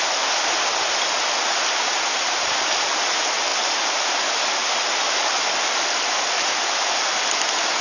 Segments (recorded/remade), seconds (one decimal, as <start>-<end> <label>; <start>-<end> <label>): 0.0-7.8 recorded